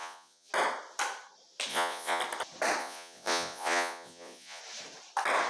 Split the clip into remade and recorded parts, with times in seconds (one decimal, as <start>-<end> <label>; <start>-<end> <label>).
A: 0.0-0.5 remade; 0.5-1.7 recorded; 1.7-2.2 remade; 2.2-2.8 recorded; 2.8-4.6 remade; 4.6-5.5 recorded